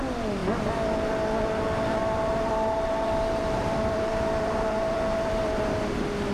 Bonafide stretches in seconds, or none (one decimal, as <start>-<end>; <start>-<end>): 0.0-2.0; 5.6-6.3